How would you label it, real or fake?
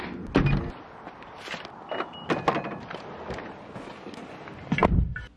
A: real